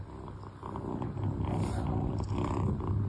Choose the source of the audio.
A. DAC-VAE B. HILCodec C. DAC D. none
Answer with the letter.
D